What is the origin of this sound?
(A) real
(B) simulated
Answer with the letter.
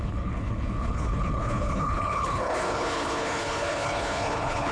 B